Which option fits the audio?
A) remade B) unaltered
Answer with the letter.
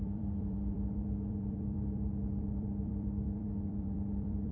A